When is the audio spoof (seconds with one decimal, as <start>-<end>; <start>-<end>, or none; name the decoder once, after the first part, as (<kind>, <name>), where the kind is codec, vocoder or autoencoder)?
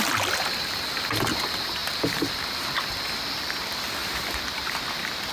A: none